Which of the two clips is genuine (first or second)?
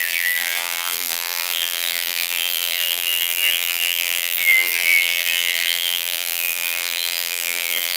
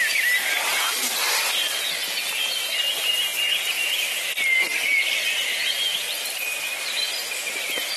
second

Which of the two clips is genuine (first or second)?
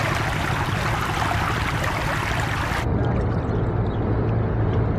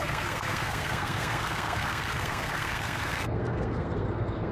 first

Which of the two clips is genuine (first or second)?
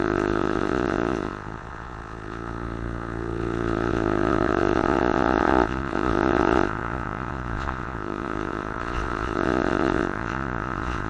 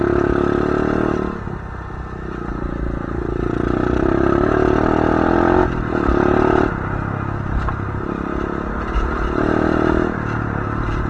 second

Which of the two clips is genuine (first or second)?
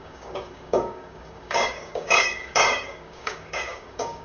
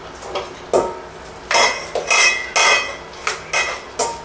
second